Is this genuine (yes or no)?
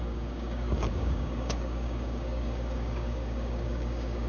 no